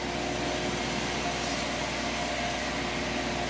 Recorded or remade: recorded